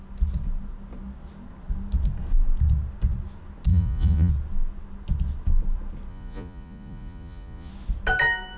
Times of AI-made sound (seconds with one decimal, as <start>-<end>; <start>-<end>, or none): 3.7-4.3; 6.1-7.7